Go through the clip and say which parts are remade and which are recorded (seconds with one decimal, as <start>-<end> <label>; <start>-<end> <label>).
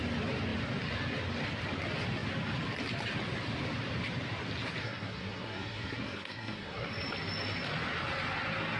0.0-4.8 recorded; 4.8-6.9 remade; 6.9-8.8 recorded